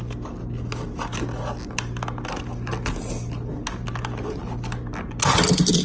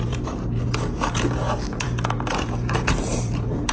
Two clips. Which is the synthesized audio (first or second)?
second